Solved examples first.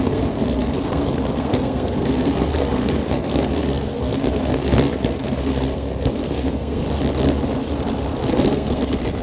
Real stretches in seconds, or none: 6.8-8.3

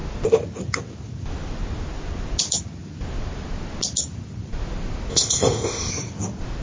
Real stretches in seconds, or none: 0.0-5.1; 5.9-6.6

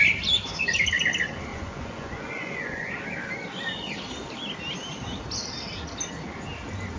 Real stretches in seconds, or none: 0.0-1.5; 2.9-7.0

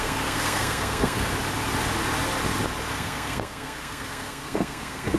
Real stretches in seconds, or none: 1.3-2.9